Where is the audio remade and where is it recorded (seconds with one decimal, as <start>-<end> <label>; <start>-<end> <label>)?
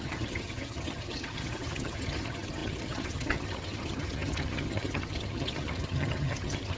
0.0-6.8 remade